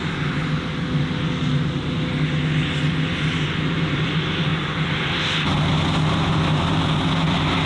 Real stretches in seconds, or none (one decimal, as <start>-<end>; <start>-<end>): 0.0-7.7